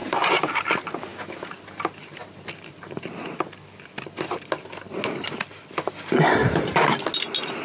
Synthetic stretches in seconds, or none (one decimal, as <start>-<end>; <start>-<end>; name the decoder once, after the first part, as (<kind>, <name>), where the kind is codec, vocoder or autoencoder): 0.0-0.5 (vocoder, BigVGAN v2); 6.4-6.9

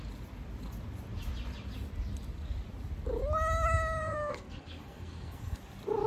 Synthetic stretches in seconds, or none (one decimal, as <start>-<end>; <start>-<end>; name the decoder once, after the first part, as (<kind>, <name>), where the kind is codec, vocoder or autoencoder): 4.0-5.6 (codec, SNAC)

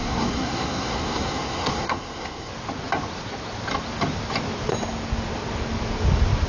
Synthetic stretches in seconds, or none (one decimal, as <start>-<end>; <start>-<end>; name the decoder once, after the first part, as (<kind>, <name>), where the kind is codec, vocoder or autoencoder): 0.0-2.5 (codec, SNAC)

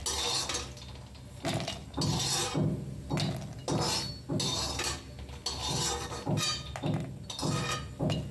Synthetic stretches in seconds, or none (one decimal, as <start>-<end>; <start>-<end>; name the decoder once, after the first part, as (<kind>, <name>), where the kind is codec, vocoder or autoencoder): none

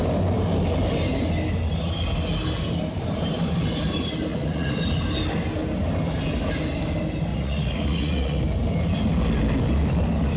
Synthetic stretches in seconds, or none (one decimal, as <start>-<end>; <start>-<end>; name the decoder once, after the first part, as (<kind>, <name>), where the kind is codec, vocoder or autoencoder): 4.3-4.8 (vocoder, Vocos); 7.3-8.4